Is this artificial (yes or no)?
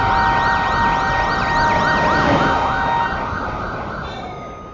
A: no